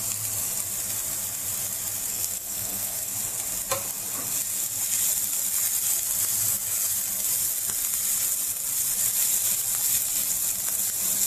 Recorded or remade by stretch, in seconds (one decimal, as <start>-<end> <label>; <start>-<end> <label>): 0.0-2.1 recorded; 2.1-3.1 remade; 3.1-11.3 recorded